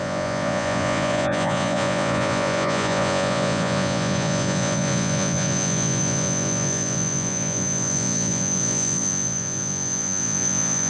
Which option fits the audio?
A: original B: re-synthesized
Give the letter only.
B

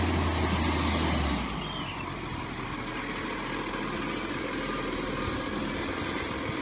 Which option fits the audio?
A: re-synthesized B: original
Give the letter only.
B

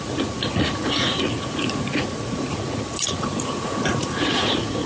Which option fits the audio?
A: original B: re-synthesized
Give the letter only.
B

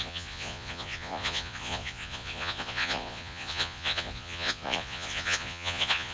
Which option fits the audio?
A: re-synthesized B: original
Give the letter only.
A